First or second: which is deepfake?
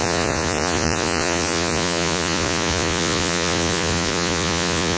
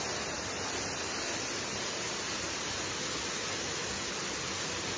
first